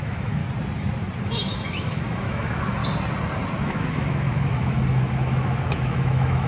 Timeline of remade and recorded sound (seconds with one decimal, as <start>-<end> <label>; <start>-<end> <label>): 0.0-0.4 remade; 0.4-1.2 recorded; 1.2-2.8 remade; 2.8-3.6 recorded; 3.6-6.5 remade

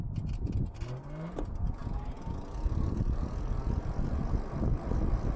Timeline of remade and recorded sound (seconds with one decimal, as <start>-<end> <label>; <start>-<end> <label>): 0.0-5.4 recorded

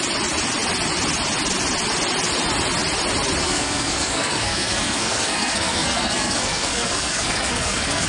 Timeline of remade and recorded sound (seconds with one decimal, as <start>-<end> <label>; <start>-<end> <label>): 0.0-3.4 recorded; 3.4-8.1 remade

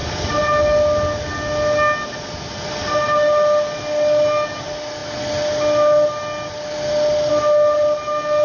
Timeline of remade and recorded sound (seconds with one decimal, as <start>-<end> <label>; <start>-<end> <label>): 0.0-8.4 recorded

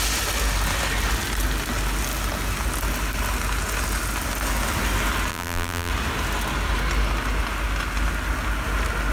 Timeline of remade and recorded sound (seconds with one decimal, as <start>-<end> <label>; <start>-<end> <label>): 0.0-5.3 recorded; 5.3-5.9 remade; 5.9-9.1 recorded